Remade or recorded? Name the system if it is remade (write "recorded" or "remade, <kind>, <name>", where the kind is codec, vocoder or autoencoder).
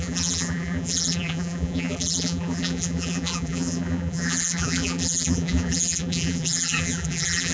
remade, vocoder, BigVGAN v2